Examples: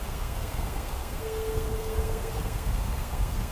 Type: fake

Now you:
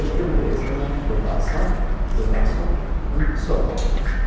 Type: real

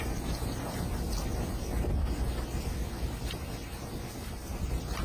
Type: real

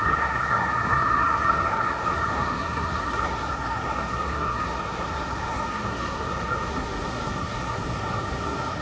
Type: fake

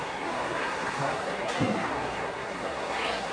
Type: fake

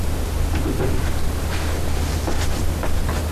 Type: real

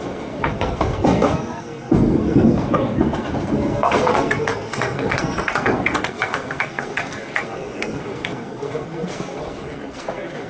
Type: fake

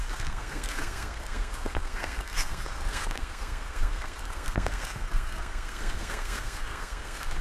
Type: fake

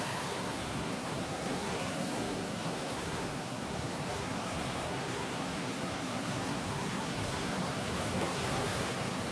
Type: fake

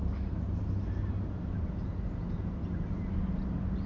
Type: real